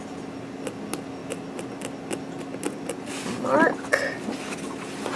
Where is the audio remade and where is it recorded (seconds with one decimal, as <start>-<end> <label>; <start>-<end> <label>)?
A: 0.0-5.2 recorded